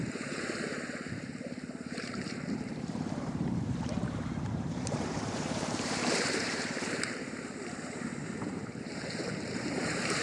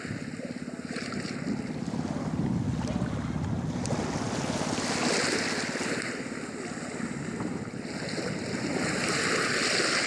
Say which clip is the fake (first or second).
first